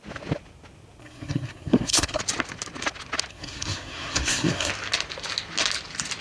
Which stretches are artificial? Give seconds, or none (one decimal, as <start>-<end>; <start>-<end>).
1.0-2.2; 3.3-4.7